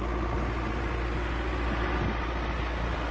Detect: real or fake real